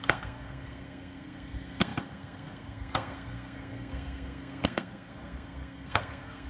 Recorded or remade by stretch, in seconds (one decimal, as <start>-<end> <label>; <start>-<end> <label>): 0.0-6.5 remade